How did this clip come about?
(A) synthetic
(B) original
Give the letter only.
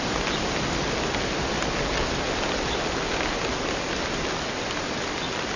B